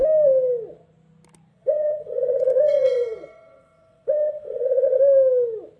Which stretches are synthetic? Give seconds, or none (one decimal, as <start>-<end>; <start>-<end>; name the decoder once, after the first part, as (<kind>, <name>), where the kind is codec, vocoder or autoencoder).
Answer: 1.5-5.0 (vocoder, WaveNeXt)